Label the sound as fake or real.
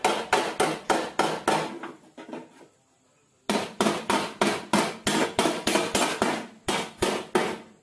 real